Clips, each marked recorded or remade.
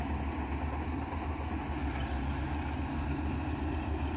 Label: recorded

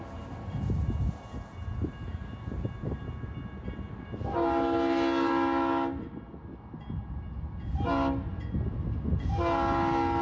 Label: recorded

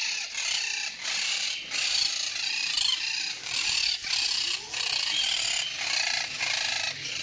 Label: recorded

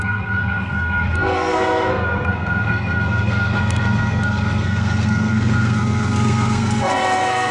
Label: remade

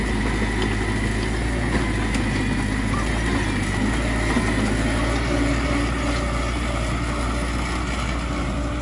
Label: recorded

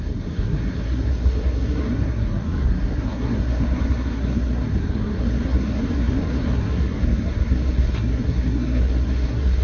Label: remade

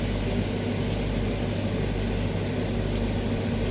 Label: recorded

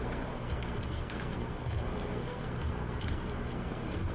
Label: remade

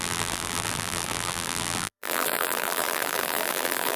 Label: remade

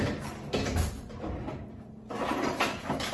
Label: recorded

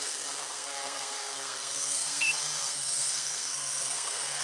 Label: remade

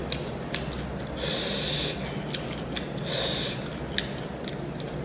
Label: recorded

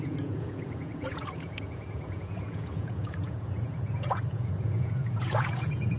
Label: remade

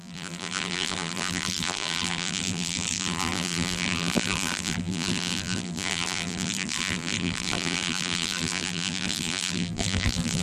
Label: remade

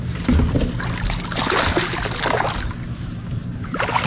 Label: recorded